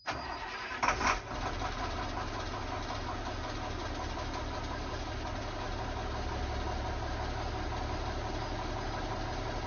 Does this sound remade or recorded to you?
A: recorded